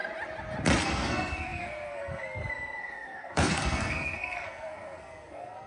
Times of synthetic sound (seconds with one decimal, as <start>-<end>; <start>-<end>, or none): 0.8-5.7